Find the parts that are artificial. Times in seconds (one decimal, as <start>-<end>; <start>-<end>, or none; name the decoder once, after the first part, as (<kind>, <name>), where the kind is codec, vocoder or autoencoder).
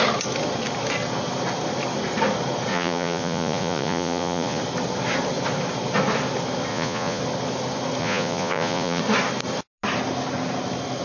2.7-4.6 (vocoder, Vocos); 6.7-7.2; 8.0-9.0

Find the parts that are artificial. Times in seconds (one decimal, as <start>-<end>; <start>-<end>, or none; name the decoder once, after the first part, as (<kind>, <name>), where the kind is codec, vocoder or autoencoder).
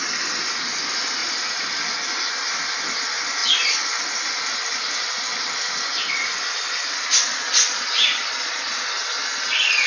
7.3-8.6 (vocoder, Vocos)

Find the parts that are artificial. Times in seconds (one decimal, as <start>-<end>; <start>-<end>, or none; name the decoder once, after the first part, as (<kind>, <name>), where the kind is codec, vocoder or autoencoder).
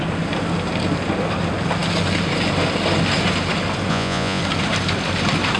3.9-4.4 (vocoder, Vocos)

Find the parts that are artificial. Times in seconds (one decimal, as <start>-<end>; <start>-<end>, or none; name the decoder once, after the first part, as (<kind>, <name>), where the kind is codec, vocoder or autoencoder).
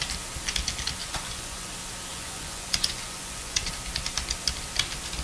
1.0-1.7 (vocoder, Vocos); 2.1-3.7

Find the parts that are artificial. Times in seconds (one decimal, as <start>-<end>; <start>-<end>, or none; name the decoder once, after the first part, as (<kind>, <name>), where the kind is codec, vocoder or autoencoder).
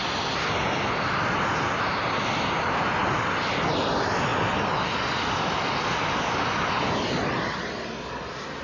none